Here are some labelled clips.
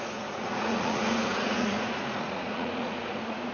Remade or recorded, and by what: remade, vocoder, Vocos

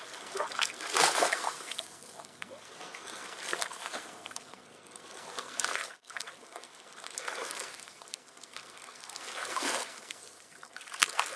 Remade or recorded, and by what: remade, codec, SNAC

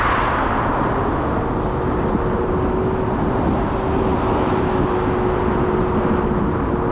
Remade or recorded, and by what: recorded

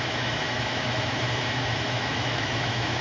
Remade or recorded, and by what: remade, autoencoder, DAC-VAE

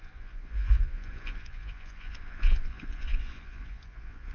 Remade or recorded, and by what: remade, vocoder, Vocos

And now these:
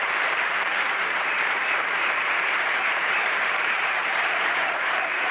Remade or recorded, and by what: remade, vocoder, BigVGAN v2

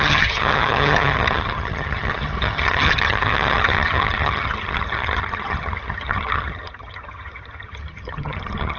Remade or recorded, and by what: remade, vocoder, HiFi-GAN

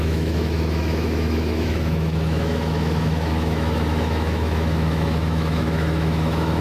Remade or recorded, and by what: remade, autoencoder, DAC-VAE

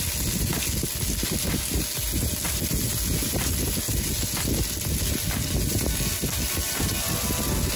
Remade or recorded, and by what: recorded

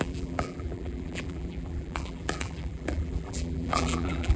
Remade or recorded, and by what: remade, vocoder, BigVGAN v2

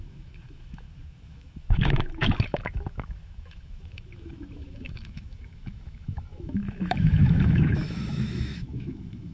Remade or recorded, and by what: remade, autoencoder, DAC-VAE